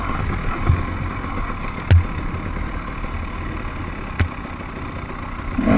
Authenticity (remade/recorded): recorded